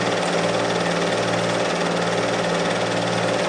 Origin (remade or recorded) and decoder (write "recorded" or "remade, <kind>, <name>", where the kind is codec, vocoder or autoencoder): recorded